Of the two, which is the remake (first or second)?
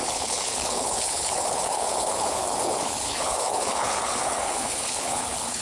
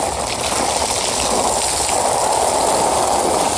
first